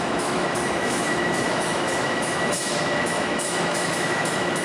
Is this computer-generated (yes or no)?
yes